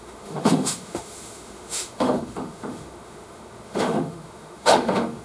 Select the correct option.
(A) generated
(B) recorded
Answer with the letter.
A